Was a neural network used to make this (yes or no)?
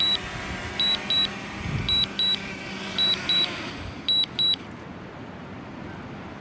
no